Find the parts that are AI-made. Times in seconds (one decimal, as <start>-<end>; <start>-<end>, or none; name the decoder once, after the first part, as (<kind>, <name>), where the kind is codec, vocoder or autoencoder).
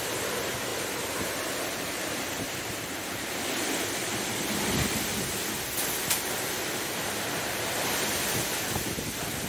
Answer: 0.7-3.3 (vocoder, BigVGAN v2)